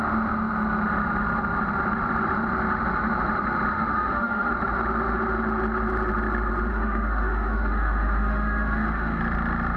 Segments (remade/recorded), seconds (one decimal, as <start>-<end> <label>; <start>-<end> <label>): 0.0-3.7 recorded; 3.7-4.5 remade; 4.5-6.7 recorded; 6.7-9.2 remade; 9.2-9.8 recorded